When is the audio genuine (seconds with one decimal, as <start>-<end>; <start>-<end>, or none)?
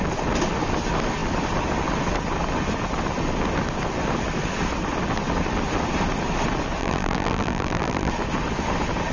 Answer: 0.0-6.8; 8.1-9.1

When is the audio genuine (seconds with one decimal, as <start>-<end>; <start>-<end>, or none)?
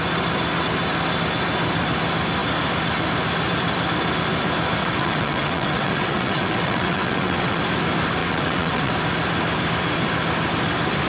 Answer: 0.0-4.8; 7.6-8.2; 8.9-11.1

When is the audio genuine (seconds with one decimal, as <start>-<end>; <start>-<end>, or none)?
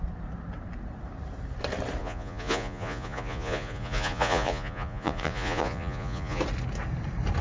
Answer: 0.0-2.0; 6.4-7.4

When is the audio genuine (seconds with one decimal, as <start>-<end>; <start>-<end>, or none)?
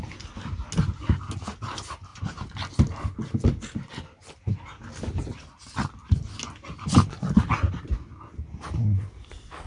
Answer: 0.0-9.7